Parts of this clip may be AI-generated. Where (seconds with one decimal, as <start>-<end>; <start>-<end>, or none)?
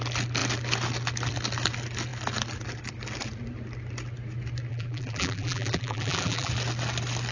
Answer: 4.7-6.5